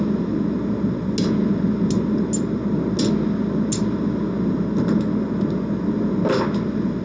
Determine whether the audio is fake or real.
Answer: real